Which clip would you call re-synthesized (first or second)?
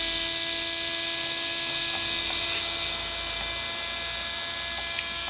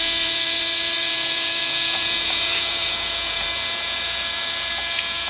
second